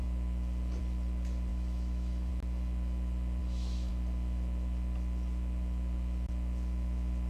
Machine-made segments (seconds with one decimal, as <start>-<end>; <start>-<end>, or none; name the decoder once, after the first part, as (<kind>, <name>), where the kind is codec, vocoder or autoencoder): 1.5-2.3 (autoencoder, DAC-VAE); 3.4-3.9